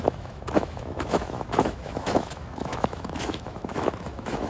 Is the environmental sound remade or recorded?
remade